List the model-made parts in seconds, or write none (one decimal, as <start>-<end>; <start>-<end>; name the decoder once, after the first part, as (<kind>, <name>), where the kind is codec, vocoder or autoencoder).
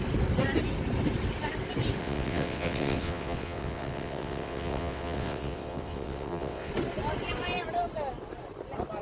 2.0-6.7 (vocoder, WaveNeXt)